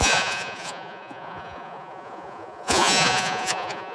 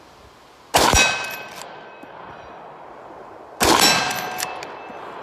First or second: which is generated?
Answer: first